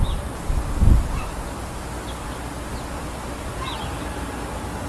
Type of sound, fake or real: real